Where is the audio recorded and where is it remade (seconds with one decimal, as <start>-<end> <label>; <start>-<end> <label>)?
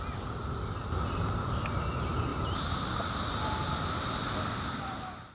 0.0-5.3 recorded